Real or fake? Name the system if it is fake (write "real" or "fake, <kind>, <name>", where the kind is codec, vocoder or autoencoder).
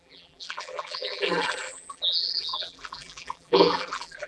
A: fake, vocoder, BigVGAN v2